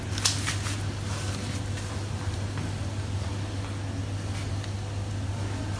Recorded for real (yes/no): yes